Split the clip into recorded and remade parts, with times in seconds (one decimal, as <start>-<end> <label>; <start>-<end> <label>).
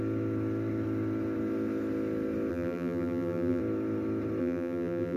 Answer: 0.0-2.5 recorded; 2.5-3.6 remade; 3.6-4.4 recorded; 4.4-5.2 remade